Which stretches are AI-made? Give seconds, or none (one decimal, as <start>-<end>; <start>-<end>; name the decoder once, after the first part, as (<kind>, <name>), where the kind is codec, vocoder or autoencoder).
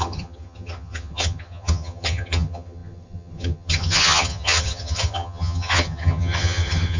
0.0-7.0 (vocoder, HiFi-GAN)